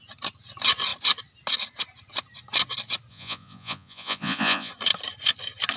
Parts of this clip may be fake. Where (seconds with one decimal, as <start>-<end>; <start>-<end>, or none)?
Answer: 3.1-4.7